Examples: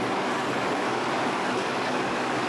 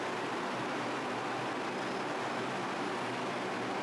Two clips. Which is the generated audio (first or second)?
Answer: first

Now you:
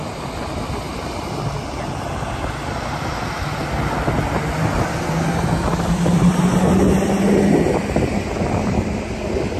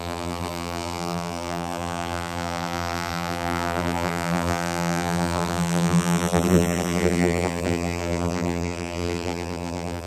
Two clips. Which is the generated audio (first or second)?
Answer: second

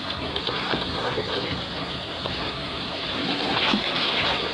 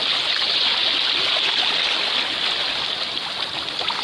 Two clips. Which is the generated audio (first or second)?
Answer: first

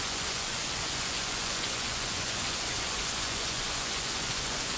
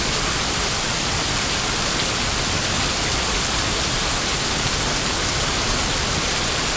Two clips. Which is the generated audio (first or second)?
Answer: first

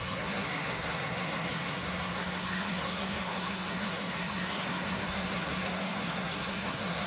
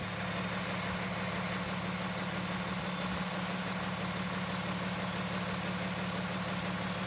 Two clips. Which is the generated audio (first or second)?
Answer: first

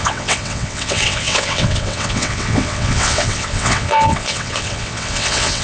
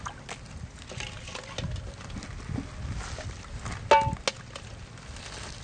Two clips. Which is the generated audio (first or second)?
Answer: first